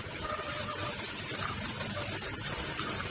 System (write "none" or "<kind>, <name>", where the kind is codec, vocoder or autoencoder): vocoder, BigVGAN v2